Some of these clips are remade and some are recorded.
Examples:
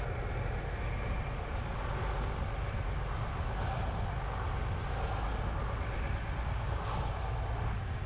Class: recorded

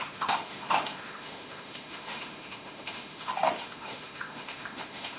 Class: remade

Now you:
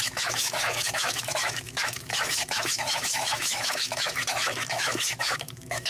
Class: remade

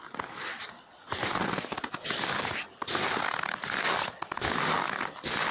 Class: recorded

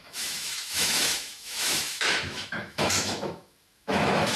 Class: remade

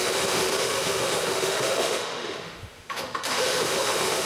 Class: remade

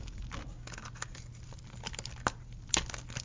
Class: recorded